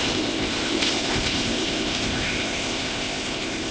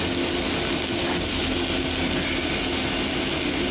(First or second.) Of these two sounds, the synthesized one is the first